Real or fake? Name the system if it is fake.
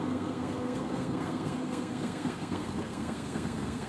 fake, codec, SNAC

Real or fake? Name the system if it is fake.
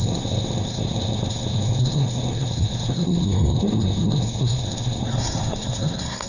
fake, codec, SNAC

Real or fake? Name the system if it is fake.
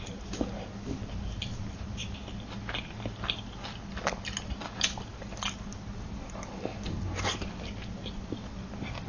real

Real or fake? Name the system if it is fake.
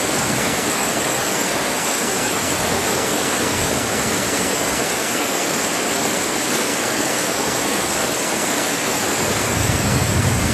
fake, codec, SNAC